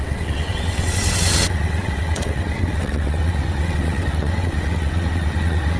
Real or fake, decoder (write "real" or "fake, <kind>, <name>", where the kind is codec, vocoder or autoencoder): fake, vocoder, WaveNeXt